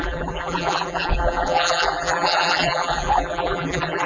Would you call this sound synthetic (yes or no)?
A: yes